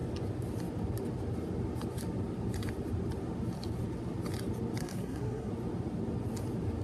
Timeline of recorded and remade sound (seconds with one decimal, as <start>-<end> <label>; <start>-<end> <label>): 0.0-4.8 recorded; 4.8-5.5 remade; 5.5-6.8 recorded